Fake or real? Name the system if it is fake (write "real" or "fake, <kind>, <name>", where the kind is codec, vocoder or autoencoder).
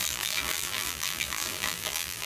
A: fake, vocoder, BigVGAN v2